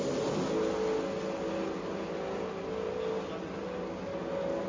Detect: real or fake real